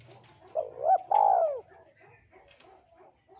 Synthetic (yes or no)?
no